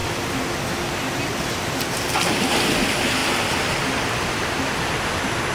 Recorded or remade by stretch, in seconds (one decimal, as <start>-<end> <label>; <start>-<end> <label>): 0.0-3.2 recorded; 3.2-4.9 remade; 4.9-5.5 recorded